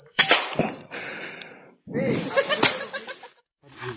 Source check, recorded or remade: remade